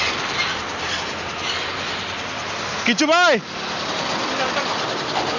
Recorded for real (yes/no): yes